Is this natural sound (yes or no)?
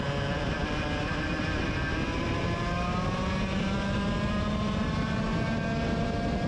yes